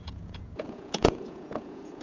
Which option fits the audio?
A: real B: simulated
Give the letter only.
B